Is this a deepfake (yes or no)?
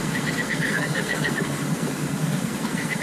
yes